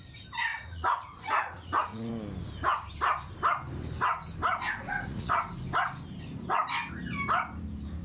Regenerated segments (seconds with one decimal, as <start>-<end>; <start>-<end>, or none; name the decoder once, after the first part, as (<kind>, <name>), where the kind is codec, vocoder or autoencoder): 0.5-2.1 (vocoder, Vocos); 4.8-5.3